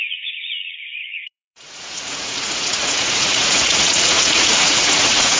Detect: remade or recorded remade